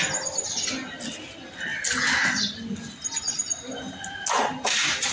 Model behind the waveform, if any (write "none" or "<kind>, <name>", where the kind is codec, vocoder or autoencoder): none